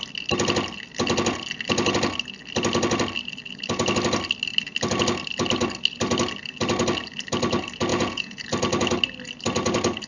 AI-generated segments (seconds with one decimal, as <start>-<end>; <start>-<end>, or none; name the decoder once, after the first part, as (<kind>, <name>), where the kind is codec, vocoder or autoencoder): 7.9-8.4 (vocoder, Vocos)